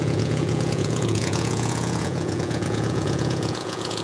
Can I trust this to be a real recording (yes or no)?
no